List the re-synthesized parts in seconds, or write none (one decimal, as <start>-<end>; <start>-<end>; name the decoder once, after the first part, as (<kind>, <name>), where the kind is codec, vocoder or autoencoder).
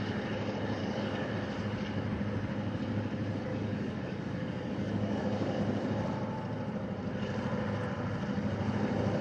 0.8-1.3 (codec, DAC); 3.5-5.6